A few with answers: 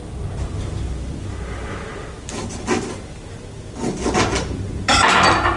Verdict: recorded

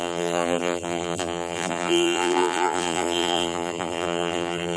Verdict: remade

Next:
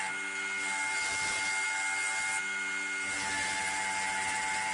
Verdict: recorded